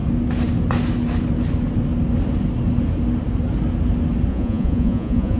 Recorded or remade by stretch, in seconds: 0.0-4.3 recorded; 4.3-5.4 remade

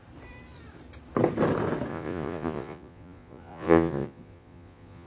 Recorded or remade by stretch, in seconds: 0.0-1.9 recorded; 1.9-5.1 remade

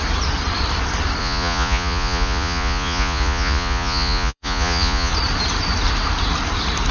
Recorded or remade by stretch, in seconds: 0.0-1.2 recorded; 1.2-5.1 remade; 5.1-6.9 recorded

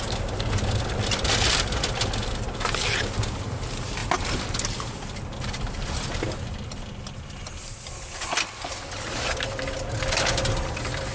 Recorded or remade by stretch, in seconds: 0.0-11.1 recorded

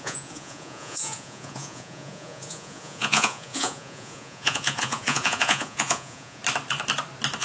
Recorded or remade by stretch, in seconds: 0.0-6.4 remade; 6.4-7.4 recorded

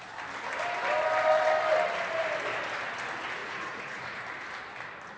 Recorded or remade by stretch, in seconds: 0.0-3.4 recorded; 3.4-4.2 remade; 4.2-5.2 recorded

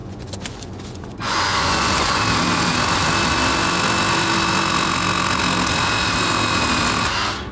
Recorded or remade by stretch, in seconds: 0.0-2.2 remade; 2.2-7.5 recorded